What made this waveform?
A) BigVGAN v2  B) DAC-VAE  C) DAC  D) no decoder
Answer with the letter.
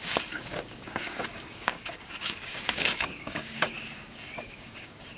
C